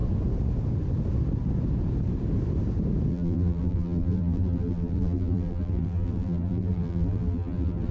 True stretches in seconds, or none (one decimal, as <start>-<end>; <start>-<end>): 0.0-3.1